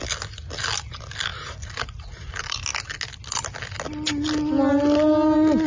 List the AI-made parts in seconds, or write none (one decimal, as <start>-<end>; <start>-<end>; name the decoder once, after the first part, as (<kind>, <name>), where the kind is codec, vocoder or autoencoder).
none